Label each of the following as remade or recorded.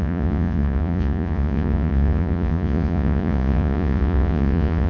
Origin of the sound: remade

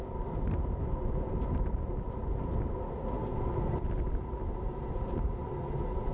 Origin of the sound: recorded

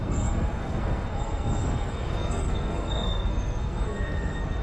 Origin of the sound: remade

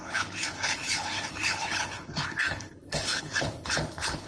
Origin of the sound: remade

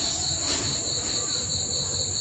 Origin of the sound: recorded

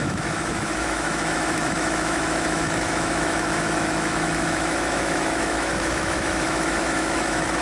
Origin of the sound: remade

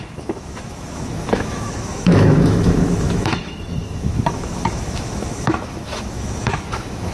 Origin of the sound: remade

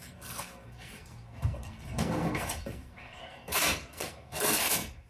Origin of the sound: remade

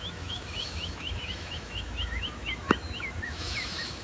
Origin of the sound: remade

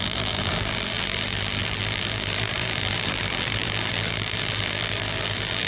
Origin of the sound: remade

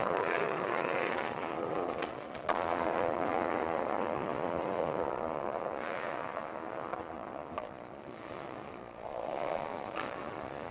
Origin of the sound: remade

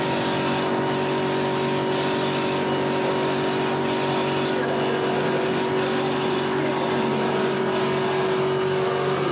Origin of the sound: recorded